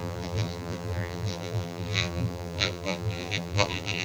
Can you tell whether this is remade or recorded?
remade